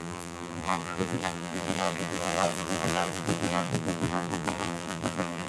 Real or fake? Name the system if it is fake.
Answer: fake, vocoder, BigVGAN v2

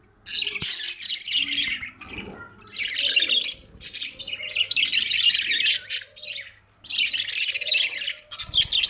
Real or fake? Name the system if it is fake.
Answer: real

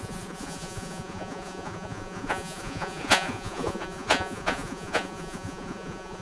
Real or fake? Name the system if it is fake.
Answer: fake, vocoder, Vocos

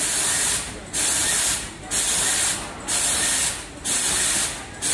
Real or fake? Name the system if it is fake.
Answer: real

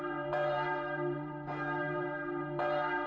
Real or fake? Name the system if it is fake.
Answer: fake, vocoder, BigVGAN v2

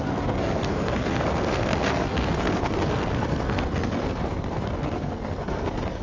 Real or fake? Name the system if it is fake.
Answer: fake, codec, SNAC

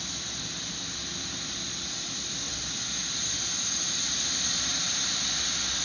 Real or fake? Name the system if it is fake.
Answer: real